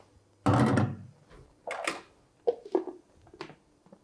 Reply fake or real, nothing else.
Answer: real